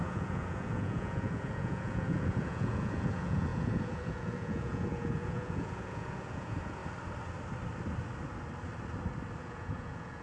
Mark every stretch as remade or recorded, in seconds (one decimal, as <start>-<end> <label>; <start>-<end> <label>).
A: 0.0-6.8 remade; 6.8-9.4 recorded; 9.4-10.2 remade